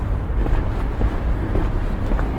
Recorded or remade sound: remade